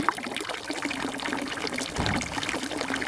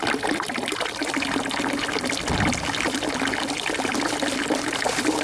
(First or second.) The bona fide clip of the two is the second